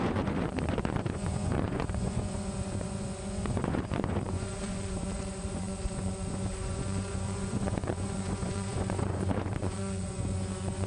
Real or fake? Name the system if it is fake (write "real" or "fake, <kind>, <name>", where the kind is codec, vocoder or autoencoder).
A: fake, vocoder, Vocos